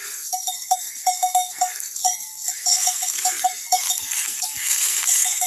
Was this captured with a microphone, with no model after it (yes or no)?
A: no